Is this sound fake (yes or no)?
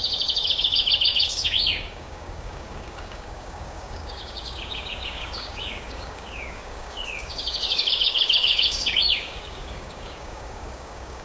yes